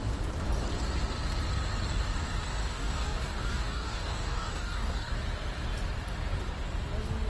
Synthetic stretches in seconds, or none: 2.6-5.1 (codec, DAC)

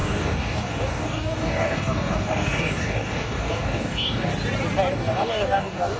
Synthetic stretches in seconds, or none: 0.0-4.3 (codec, DAC); 4.9-6.0